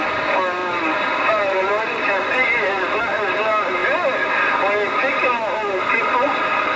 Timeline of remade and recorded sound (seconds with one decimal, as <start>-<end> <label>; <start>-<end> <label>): 0.0-0.6 recorded; 0.6-3.0 remade; 3.0-6.8 recorded